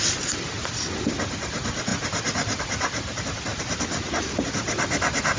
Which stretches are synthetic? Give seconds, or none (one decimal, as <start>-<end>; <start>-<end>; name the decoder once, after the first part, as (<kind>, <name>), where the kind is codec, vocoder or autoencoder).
none